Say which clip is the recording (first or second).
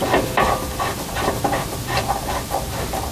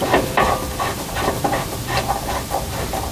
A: first